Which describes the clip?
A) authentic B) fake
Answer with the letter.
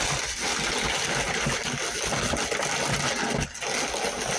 A